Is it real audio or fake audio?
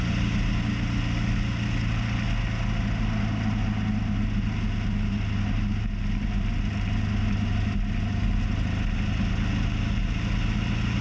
real